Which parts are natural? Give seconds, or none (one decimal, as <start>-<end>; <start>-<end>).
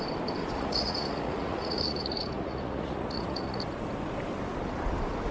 0.0-0.4; 3.6-5.3